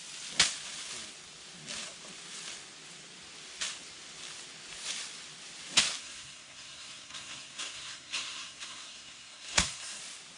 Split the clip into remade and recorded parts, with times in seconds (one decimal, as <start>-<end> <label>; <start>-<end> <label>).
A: 0.0-6.0 recorded; 6.0-10.0 remade; 10.0-10.4 recorded